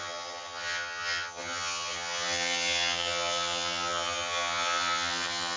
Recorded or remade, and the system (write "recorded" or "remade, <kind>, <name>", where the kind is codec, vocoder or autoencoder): remade, vocoder, HiFi-GAN